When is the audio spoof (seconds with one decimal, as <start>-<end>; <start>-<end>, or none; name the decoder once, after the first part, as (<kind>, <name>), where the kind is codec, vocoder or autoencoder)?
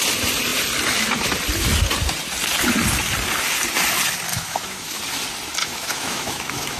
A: 4.3-5.0 (autoencoder, DAC-VAE); 5.6-6.8